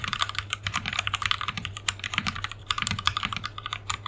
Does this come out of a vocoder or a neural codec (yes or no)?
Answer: yes